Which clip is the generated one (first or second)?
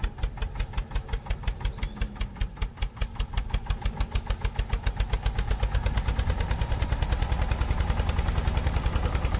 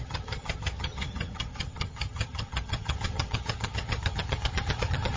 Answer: second